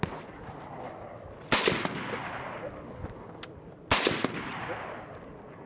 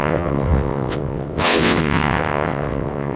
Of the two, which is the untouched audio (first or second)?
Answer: first